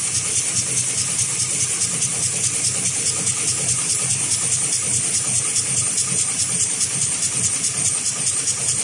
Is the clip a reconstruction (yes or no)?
no